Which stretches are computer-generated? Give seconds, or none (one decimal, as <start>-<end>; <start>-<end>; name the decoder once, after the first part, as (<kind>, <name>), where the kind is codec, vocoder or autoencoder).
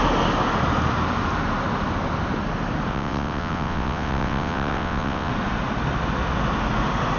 2.9-5.3 (vocoder, WaveNeXt)